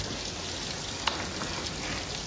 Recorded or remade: recorded